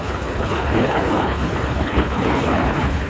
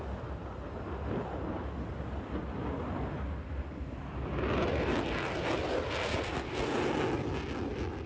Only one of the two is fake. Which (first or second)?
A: first